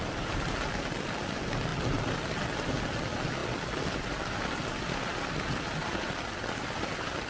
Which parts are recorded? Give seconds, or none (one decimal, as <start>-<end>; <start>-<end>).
0.0-7.3